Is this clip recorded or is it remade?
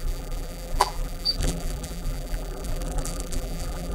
remade